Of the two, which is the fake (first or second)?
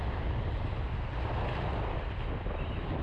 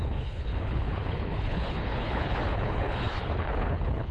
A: second